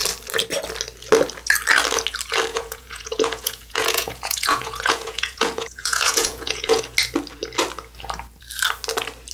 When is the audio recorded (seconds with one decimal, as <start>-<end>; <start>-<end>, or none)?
0.0-2.5; 6.8-9.3